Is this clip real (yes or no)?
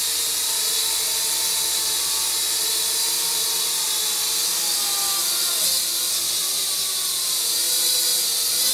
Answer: yes